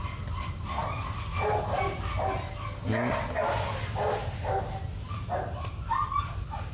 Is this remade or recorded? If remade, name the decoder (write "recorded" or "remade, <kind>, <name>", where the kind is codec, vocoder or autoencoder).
recorded